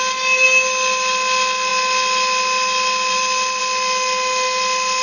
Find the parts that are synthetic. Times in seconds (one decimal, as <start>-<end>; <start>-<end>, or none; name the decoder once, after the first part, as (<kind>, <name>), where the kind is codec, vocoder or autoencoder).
none